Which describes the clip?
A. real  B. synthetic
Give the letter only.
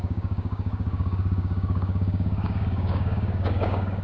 B